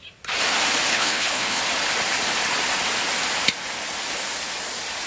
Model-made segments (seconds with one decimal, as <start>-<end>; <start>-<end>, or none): 0.9-1.6